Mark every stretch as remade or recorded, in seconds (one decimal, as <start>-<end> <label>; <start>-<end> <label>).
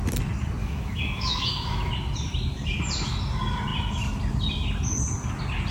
0.0-0.6 recorded; 0.6-1.9 remade; 1.9-5.7 recorded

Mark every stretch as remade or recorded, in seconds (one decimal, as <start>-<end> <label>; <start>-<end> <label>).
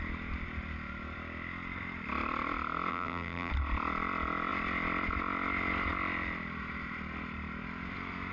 0.0-2.9 recorded; 2.9-3.5 remade; 3.5-8.3 recorded